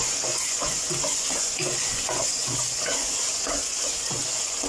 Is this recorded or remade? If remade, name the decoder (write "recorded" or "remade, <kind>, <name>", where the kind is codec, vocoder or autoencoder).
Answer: remade, vocoder, Vocos